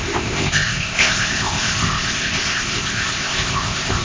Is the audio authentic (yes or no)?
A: no